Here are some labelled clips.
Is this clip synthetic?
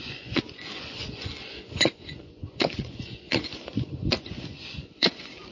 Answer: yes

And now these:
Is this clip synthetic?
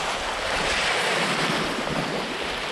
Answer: no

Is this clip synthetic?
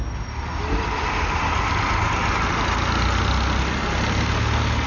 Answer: no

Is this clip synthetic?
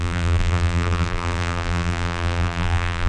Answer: yes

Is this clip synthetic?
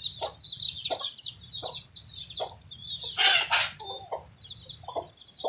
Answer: no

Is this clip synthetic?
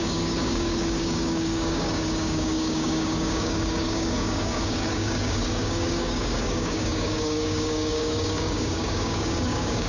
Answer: yes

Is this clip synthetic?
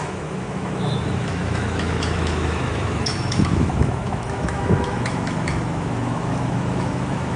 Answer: yes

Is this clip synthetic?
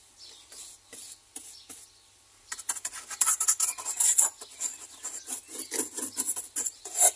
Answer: no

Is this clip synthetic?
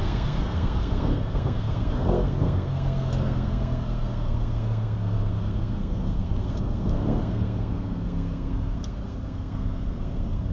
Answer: yes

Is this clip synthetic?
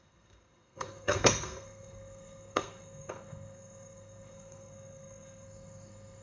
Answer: yes